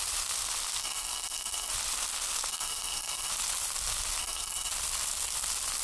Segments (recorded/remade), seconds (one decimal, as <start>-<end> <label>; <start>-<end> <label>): 0.0-0.8 recorded; 0.8-1.7 remade; 1.7-2.5 recorded; 2.5-3.3 remade; 3.3-4.2 recorded; 4.2-4.7 remade; 4.7-5.8 recorded